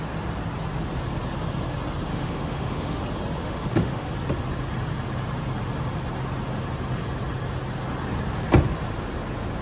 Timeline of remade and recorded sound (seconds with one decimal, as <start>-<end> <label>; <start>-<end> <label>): 0.0-2.1 recorded; 2.1-3.0 remade; 3.0-3.4 recorded; 3.4-4.1 remade; 4.1-9.6 recorded